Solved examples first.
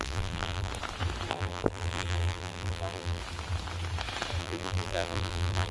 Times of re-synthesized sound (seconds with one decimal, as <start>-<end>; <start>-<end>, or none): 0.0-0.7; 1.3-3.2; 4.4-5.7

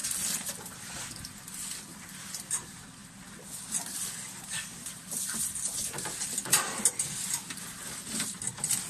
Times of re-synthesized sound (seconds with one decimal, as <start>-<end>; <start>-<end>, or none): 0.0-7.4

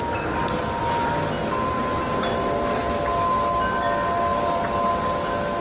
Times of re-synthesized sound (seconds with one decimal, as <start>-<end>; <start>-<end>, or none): 4.3-4.9